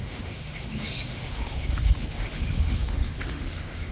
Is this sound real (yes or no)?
no